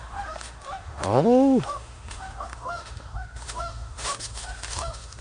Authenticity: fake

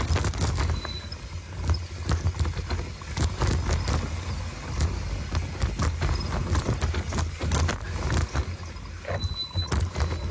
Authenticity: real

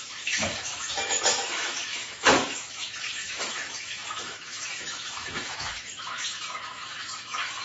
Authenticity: fake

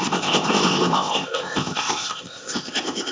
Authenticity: fake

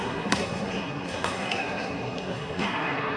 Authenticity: fake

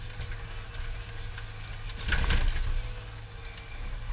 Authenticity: real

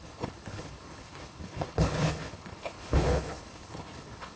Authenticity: fake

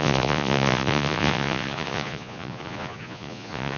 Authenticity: fake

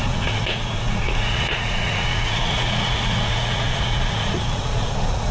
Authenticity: fake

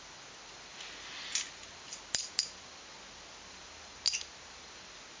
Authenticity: real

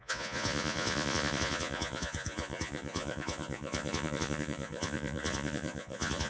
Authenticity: fake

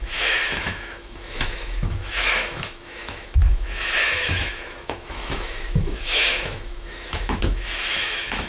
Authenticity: fake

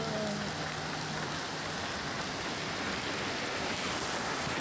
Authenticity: real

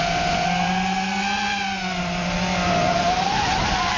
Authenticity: real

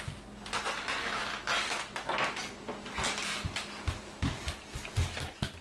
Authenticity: real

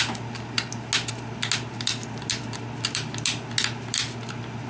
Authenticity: real